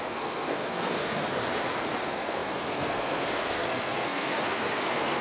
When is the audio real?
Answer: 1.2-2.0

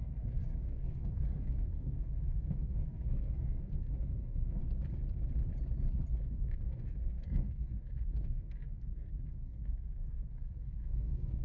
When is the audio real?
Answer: 4.6-6.3

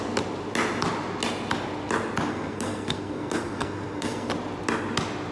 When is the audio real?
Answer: 0.0-2.3; 4.3-5.3

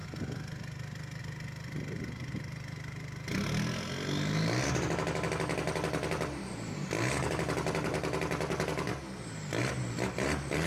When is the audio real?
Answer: 0.0-10.7

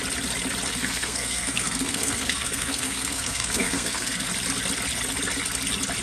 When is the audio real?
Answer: 0.0-0.7; 4.3-6.0